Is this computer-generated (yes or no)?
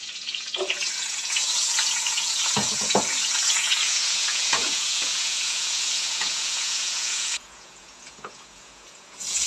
yes